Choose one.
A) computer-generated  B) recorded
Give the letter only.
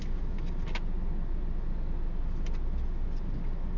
B